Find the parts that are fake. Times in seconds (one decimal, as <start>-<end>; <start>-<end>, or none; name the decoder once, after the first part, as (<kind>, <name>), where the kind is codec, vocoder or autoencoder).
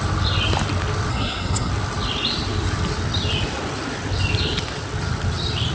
1.1-1.7 (codec, SNAC)